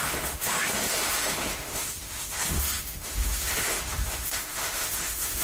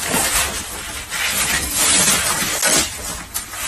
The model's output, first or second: first